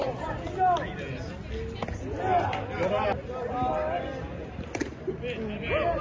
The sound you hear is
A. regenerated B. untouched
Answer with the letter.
B